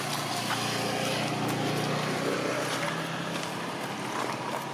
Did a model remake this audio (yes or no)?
no